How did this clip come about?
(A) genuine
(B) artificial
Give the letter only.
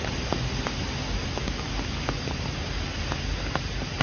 A